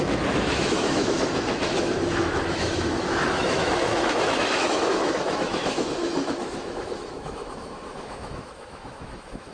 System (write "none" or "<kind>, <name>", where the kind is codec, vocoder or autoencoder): autoencoder, DAC-VAE